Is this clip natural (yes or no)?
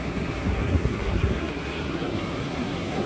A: no